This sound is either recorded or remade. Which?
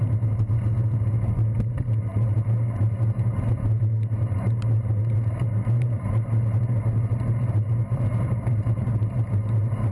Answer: remade